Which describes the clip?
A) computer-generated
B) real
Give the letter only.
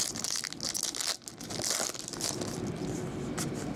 B